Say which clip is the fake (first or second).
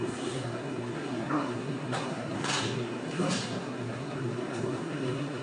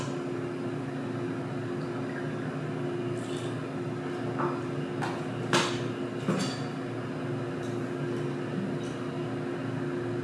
first